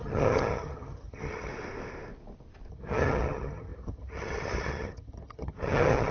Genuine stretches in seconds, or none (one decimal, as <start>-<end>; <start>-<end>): 1.5-2.7